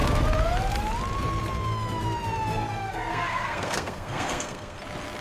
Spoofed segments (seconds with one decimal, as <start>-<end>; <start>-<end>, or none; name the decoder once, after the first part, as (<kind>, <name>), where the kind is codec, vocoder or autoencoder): 2.5-4.8 (codec, SNAC)